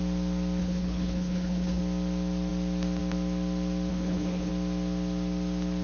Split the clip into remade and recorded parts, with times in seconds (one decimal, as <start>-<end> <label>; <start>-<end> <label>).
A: 0.0-0.6 recorded; 0.6-1.8 remade; 1.8-3.9 recorded; 3.9-4.5 remade; 4.5-5.8 recorded